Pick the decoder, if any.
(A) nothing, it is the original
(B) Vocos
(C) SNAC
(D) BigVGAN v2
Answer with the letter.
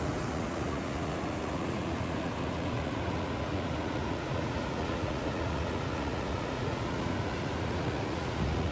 B